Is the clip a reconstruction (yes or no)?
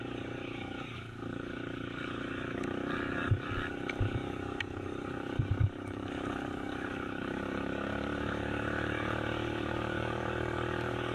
yes